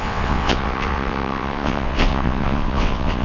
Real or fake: fake